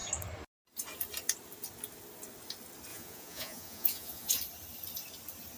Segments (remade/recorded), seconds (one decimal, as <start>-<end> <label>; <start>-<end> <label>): 0.0-2.9 recorded; 2.9-4.3 remade; 4.3-5.6 recorded